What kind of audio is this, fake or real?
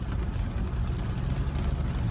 real